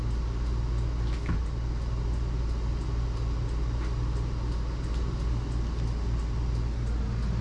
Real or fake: real